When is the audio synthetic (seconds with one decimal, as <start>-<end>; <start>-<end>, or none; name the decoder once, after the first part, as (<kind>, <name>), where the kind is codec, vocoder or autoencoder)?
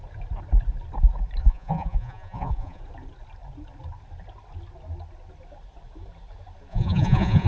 1.4-2.8 (vocoder, Vocos); 6.7-7.5